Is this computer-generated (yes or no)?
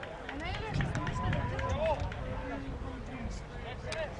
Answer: no